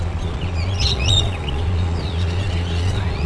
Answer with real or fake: fake